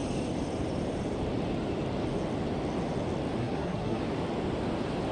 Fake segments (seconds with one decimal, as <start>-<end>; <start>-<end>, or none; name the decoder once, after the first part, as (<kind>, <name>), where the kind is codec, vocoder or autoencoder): 3.4-4.0 (codec, SNAC)